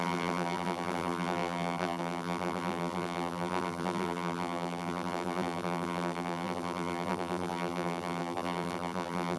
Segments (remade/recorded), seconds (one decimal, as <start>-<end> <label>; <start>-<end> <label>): 0.0-9.4 remade